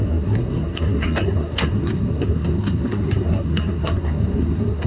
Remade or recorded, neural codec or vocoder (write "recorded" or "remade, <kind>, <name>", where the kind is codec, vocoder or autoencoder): remade, codec, SNAC